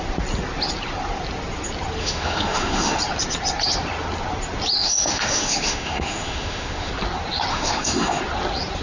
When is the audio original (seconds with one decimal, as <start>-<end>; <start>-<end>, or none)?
0.0-2.0; 3.0-4.8; 6.9-7.5; 8.2-8.8